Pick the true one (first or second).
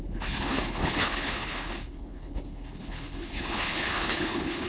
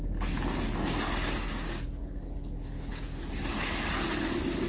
second